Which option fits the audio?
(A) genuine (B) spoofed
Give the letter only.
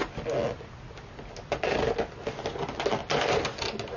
A